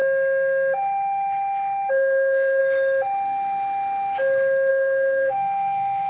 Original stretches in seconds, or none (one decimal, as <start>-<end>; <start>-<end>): 0.0-1.9; 2.6-4.7

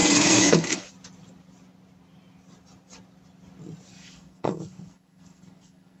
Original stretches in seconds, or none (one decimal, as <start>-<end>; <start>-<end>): 0.9-3.9

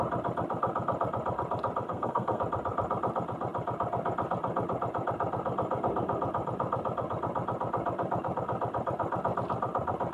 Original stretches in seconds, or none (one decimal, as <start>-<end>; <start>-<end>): 0.0-1.9; 2.4-10.1